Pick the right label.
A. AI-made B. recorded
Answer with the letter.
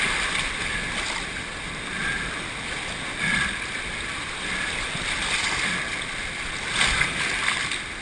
B